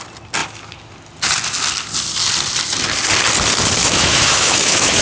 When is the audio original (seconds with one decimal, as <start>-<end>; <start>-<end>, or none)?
0.0-3.8